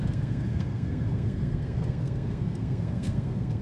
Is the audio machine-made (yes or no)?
yes